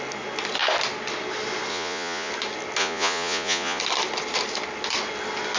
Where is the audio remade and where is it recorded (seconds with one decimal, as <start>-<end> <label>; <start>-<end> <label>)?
0.0-1.7 recorded; 1.7-2.3 remade; 2.3-2.8 recorded; 2.8-3.8 remade; 3.8-5.6 recorded